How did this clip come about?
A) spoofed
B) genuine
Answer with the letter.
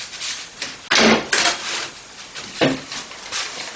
B